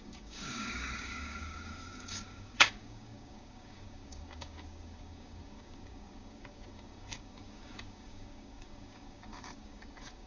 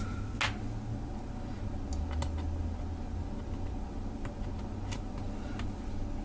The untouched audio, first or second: second